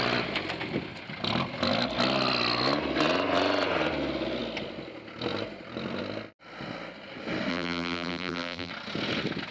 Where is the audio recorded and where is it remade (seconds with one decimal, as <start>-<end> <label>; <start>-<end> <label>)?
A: 0.0-7.5 recorded; 7.5-8.7 remade; 8.7-9.5 recorded